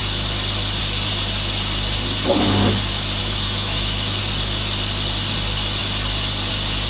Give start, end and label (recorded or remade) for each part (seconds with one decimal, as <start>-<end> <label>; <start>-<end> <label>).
0.0-3.2 recorded; 3.2-4.2 remade; 4.2-6.9 recorded